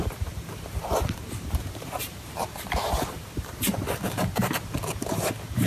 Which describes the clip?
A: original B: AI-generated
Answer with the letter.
B